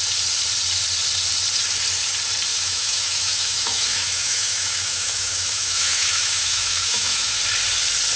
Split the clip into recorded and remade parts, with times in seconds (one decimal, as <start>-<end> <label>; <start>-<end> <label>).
0.0-2.5 recorded; 2.5-7.4 remade; 7.4-8.2 recorded